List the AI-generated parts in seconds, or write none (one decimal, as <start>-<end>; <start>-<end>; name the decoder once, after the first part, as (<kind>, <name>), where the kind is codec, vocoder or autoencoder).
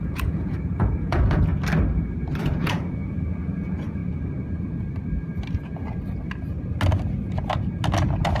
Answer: 0.0-1.5 (vocoder, Vocos); 2.4-4.0